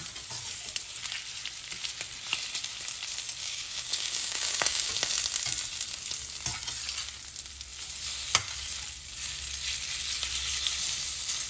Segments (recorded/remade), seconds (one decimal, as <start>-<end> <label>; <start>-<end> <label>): 0.0-3.4 recorded; 3.4-4.9 remade; 4.9-11.5 recorded